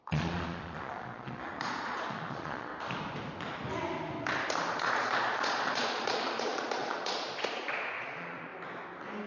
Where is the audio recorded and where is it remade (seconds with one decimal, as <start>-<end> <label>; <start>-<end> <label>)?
0.0-2.7 remade; 2.7-4.8 recorded; 4.8-8.5 remade; 8.5-9.3 recorded